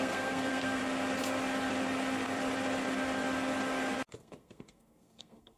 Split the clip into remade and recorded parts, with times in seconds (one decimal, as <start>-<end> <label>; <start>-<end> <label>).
0.0-0.8 remade; 0.8-4.2 recorded; 4.2-5.6 remade